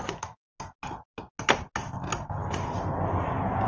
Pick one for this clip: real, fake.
real